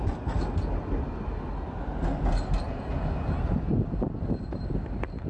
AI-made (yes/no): no